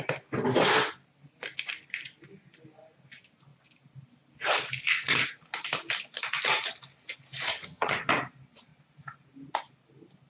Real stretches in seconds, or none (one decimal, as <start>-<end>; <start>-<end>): 0.0-7.5; 8.1-10.3